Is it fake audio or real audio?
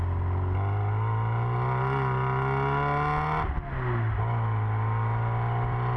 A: real